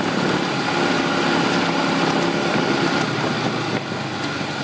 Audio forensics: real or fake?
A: real